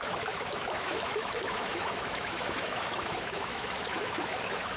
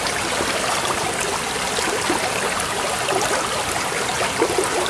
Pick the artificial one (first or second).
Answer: first